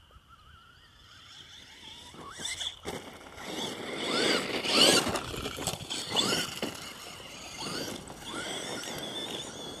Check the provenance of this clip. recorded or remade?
recorded